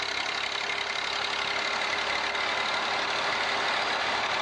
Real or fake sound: real